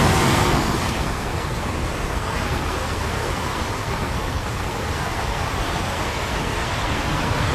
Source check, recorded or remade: remade